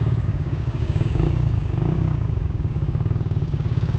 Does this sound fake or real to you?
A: fake